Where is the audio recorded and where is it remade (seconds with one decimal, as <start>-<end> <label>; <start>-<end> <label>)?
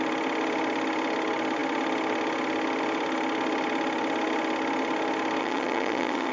0.0-5.4 recorded; 5.4-6.3 remade